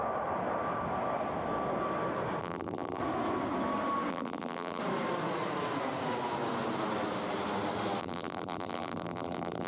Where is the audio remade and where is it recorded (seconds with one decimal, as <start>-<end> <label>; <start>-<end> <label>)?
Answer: 0.0-2.4 recorded; 2.4-3.0 remade; 3.0-4.1 recorded; 4.1-4.8 remade; 4.8-8.0 recorded; 8.0-9.7 remade

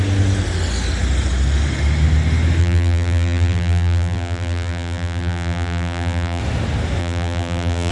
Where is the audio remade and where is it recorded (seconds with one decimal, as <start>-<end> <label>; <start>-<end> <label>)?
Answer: 0.0-2.6 recorded; 2.6-6.4 remade; 6.4-7.0 recorded; 7.0-7.9 remade